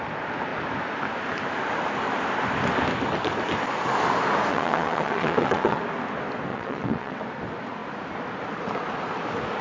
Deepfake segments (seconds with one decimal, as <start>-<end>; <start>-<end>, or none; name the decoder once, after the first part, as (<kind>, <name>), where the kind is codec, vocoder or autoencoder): 4.5-5.8 (vocoder, WaveNeXt); 6.5-7.2